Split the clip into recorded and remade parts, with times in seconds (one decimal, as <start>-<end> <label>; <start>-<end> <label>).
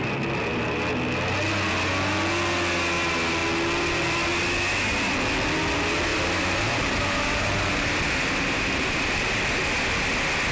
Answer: 0.0-6.1 recorded; 6.1-9.3 remade; 9.3-10.5 recorded